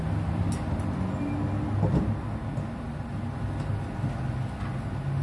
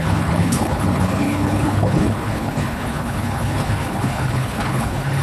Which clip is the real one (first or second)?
first